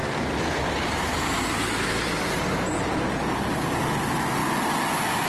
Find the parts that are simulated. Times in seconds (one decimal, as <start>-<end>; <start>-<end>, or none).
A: 0.0-3.2